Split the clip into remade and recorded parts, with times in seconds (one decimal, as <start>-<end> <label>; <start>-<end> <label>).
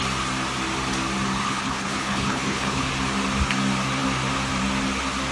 0.0-1.4 recorded; 1.4-2.9 remade; 2.9-5.3 recorded